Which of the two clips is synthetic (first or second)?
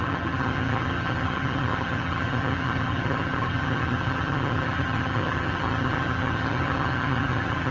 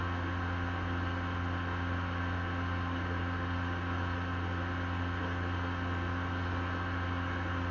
first